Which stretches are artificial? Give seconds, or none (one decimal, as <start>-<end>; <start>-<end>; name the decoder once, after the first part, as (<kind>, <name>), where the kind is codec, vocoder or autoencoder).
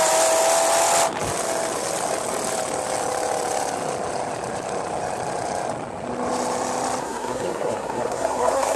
7.0-8.8 (codec, SNAC)